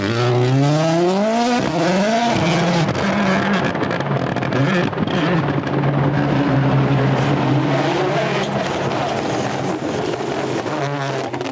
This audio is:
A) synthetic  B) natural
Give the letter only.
B